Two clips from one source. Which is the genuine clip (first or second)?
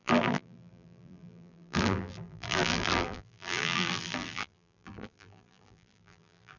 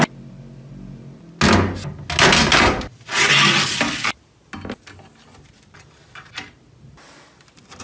second